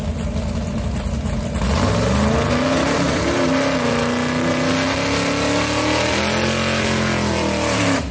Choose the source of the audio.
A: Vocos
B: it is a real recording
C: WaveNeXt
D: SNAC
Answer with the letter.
B